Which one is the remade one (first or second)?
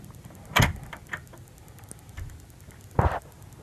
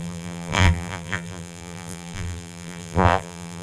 second